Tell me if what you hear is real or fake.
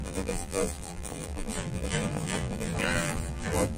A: fake